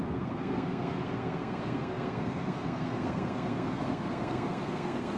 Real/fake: fake